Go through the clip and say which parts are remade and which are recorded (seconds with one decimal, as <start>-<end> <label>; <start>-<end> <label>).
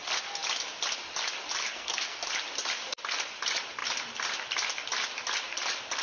0.0-1.6 recorded; 1.6-2.2 remade; 2.2-6.0 recorded